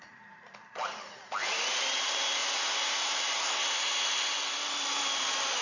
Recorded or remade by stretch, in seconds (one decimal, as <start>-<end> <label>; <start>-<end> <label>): 0.0-2.4 remade; 2.4-3.4 recorded; 3.4-5.6 remade